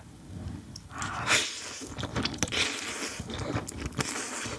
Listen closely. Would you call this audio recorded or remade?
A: recorded